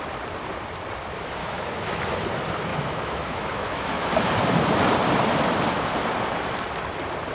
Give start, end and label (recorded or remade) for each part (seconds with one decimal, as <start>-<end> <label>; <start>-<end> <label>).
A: 0.0-1.4 recorded; 1.4-2.0 remade; 2.0-2.7 recorded; 2.7-4.3 remade; 4.3-7.3 recorded